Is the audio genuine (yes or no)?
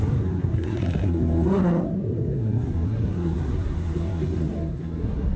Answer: no